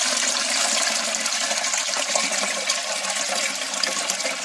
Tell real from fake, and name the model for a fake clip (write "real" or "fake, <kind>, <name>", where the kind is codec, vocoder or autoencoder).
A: real